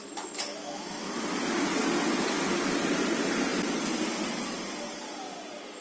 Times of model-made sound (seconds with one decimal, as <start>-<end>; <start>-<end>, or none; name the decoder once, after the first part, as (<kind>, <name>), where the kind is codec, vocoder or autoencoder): 0.5-1.1 (autoencoder, DAC-VAE)